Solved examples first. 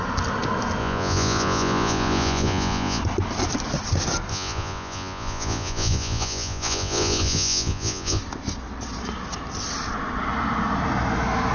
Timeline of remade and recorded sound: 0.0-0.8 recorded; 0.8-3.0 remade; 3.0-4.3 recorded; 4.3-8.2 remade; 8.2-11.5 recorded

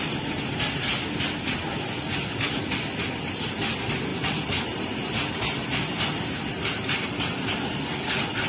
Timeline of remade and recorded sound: 0.0-8.5 recorded

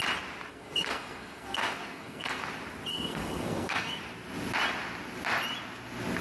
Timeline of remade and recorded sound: 0.0-0.5 recorded; 0.5-2.4 remade; 2.4-2.9 recorded; 2.9-4.0 remade; 4.0-6.2 recorded

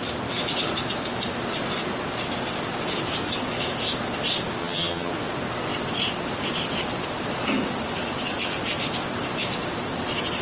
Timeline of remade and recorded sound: 0.0-4.6 recorded; 4.6-5.1 remade; 5.1-10.4 recorded

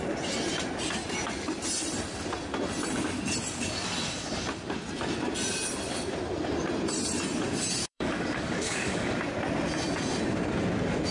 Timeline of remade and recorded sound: 0.0-7.8 recorded; 7.8-9.1 remade; 9.1-11.1 recorded

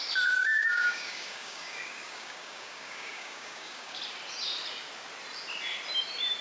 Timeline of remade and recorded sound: 0.0-0.4 recorded; 0.4-4.0 remade; 4.0-6.4 recorded

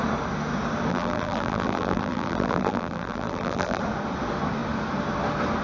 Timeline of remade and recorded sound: 0.0-0.9 recorded; 0.9-3.8 remade; 3.8-5.6 recorded

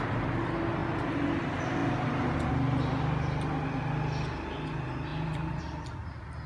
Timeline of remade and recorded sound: 0.0-5.1 recorded; 5.1-5.6 remade; 5.6-6.5 recorded